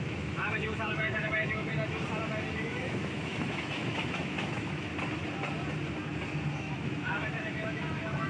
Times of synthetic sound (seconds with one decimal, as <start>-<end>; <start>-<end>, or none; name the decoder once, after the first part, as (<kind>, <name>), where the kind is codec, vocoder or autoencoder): 0.0-1.7 (autoencoder, DAC-VAE); 2.5-4.9; 6.6-8.3